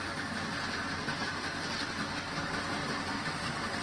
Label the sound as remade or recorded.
recorded